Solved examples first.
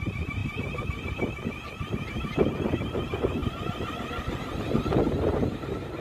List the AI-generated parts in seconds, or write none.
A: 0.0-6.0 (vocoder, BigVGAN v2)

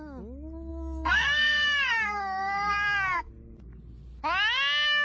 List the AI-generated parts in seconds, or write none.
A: 0.7-3.3 (codec, SNAC)